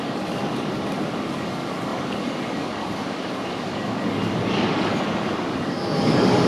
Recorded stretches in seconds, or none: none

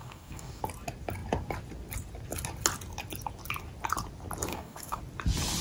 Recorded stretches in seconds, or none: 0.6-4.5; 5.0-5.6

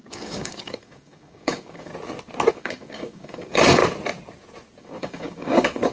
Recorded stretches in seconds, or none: 1.9-2.5; 3.8-4.8